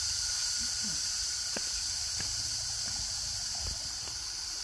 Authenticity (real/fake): real